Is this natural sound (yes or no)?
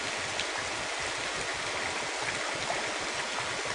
yes